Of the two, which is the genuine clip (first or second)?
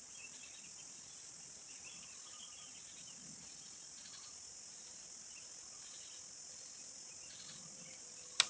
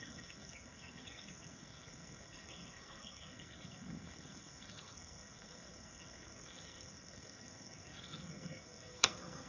first